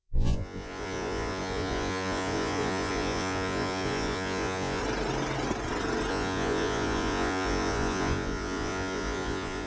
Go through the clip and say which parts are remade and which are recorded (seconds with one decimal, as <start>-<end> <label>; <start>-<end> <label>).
0.0-4.8 remade; 4.8-6.1 recorded; 6.1-9.7 remade